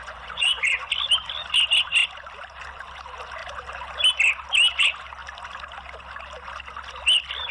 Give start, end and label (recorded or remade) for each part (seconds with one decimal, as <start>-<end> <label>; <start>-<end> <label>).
0.0-0.9 remade; 0.9-7.5 recorded